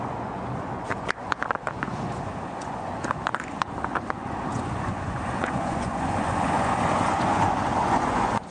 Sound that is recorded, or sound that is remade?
remade